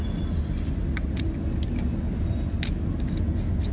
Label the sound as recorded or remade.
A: recorded